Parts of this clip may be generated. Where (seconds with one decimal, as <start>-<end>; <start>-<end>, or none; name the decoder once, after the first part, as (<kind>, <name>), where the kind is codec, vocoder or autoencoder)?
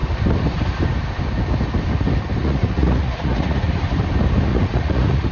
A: 2.4-3.7 (vocoder, Vocos); 4.5-5.3